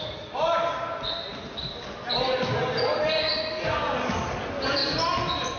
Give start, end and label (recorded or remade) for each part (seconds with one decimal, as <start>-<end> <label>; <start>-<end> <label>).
0.0-5.6 recorded